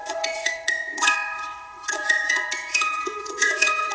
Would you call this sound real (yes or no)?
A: no